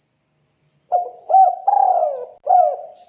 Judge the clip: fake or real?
real